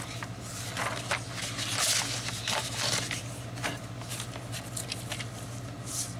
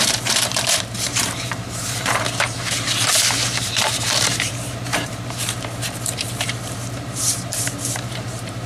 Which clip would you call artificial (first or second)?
second